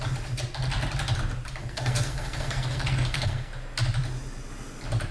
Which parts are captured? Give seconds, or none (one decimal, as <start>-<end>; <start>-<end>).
0.0-1.6; 3.5-5.1

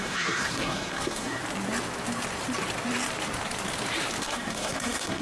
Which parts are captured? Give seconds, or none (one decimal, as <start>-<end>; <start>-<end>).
1.4-4.2